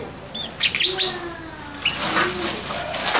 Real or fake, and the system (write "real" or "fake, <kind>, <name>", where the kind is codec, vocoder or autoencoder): real